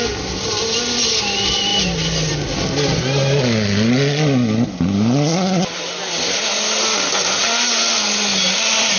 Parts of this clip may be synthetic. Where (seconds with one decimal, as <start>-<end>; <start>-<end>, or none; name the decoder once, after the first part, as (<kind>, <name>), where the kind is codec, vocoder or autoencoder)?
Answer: none

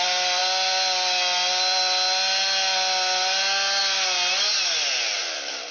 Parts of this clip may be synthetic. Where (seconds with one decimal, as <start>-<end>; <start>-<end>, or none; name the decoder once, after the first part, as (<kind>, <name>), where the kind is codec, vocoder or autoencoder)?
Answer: none

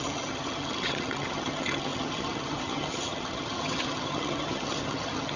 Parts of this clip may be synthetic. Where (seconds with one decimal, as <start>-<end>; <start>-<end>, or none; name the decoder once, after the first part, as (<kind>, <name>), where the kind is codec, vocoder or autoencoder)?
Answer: 0.0-5.4 (vocoder, HiFi-GAN)

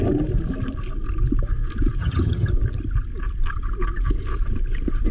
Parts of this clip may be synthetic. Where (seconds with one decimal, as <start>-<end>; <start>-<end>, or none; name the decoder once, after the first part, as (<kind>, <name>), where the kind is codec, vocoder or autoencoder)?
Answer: 2.0-2.5 (vocoder, HiFi-GAN)

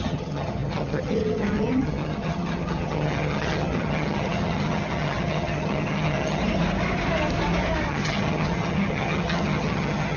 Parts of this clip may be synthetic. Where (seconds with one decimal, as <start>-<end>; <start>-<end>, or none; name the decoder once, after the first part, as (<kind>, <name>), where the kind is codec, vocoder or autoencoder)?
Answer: 0.0-6.4 (vocoder, HiFi-GAN); 7.9-10.2

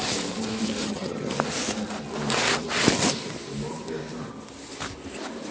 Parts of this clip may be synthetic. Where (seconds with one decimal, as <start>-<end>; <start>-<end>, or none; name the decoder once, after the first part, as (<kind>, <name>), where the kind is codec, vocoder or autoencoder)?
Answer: 0.8-1.3 (vocoder, HiFi-GAN)

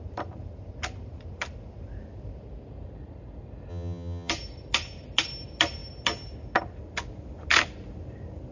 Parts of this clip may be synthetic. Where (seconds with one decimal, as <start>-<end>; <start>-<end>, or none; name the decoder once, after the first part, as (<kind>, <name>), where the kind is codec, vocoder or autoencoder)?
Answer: 3.7-4.3 (vocoder, HiFi-GAN)

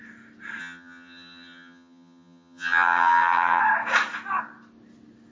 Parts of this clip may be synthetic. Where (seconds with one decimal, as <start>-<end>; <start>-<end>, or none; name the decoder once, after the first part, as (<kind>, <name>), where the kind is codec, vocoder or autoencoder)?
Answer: 0.6-3.6 (vocoder, HiFi-GAN)